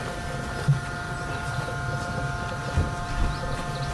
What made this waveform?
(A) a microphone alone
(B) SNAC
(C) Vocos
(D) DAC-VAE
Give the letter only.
A